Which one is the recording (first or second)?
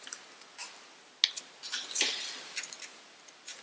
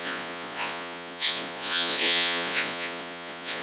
first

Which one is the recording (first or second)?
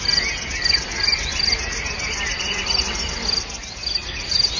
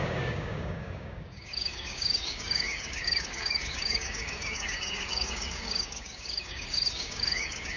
first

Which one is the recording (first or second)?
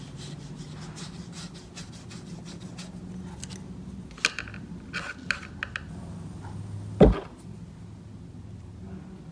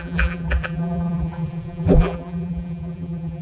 first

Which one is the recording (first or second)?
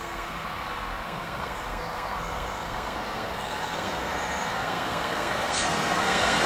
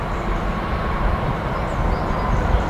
second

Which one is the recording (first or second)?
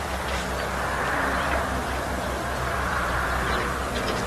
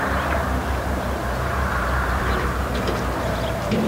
first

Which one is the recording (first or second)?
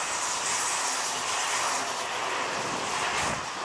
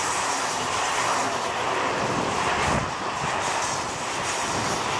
first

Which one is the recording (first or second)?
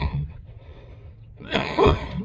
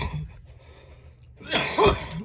second